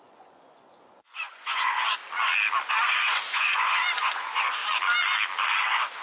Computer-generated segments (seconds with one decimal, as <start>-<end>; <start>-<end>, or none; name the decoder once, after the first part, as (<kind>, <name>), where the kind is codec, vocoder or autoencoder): 0.0-2.0 (vocoder, Vocos); 2.7-4.6; 5.6-6.0